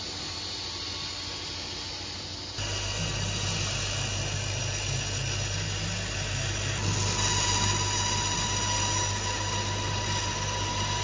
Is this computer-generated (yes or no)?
no